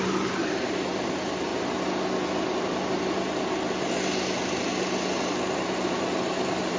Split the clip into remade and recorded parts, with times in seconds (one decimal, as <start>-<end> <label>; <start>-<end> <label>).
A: 0.0-1.5 remade; 1.5-5.6 recorded; 5.6-6.8 remade